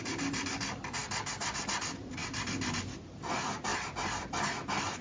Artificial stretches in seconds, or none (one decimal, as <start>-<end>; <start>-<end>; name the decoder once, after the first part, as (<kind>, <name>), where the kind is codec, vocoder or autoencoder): none